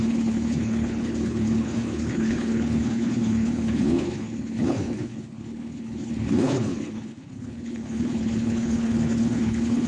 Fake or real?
fake